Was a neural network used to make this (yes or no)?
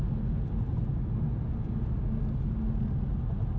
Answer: no